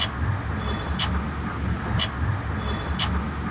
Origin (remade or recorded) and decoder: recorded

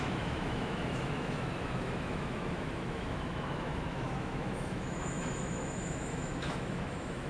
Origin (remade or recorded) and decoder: remade, autoencoder, DAC-VAE